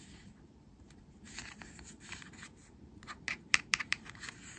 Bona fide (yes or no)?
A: no